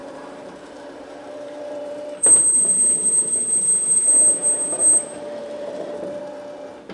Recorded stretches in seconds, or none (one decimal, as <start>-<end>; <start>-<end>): 4.1-5.4; 6.2-6.9